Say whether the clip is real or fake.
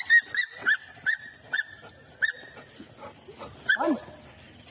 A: real